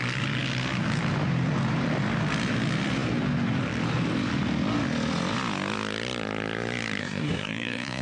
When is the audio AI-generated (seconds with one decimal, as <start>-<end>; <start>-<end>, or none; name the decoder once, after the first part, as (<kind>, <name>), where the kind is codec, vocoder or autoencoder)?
7.0-8.0 (codec, SNAC)